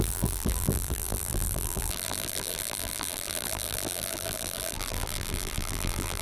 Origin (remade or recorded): remade